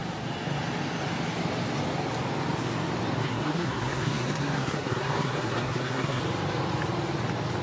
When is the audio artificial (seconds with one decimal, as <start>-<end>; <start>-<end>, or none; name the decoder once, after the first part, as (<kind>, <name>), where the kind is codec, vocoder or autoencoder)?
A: 3.2-6.2 (codec, SNAC)